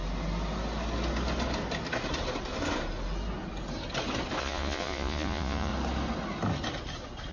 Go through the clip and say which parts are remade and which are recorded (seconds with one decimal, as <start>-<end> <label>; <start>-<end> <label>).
0.0-4.4 recorded; 4.4-5.7 remade; 5.7-7.3 recorded